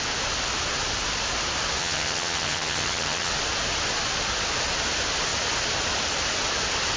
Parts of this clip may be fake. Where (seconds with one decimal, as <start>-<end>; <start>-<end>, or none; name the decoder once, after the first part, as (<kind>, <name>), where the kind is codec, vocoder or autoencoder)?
1.8-3.3 (vocoder, HiFi-GAN)